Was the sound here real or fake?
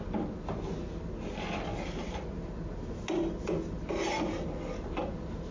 real